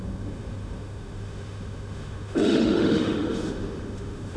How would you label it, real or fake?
fake